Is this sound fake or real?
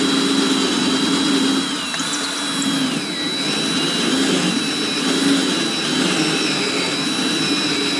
real